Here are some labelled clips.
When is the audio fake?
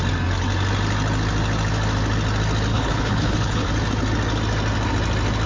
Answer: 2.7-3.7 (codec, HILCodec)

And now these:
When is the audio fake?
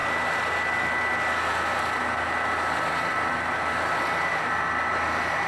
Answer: none